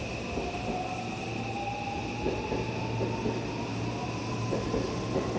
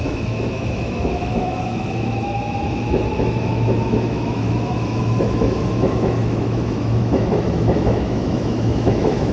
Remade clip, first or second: second